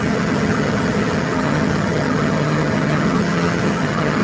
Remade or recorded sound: remade